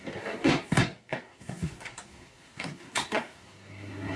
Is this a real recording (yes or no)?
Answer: no